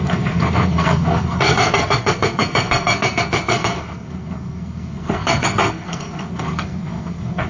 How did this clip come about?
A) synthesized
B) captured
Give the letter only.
A